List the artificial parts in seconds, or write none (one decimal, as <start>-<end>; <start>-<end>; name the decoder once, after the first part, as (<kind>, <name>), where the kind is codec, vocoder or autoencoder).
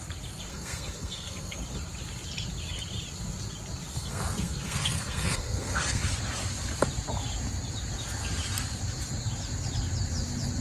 0.5-1.6 (codec, SNAC); 3.9-6.0